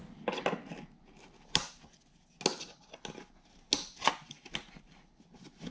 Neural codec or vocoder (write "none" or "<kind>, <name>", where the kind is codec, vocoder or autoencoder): none